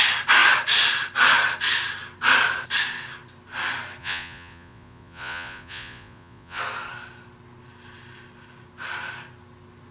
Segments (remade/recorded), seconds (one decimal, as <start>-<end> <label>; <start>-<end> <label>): 0.0-4.0 recorded; 4.0-6.6 remade; 6.6-9.9 recorded